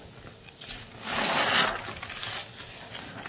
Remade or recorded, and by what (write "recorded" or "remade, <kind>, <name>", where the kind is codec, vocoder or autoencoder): recorded